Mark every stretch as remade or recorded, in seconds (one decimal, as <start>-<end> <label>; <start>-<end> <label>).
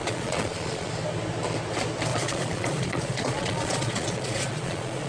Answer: 0.0-0.9 remade; 0.9-2.1 recorded; 2.1-5.1 remade